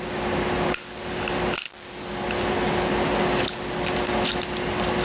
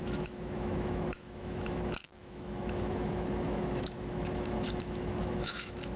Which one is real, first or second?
first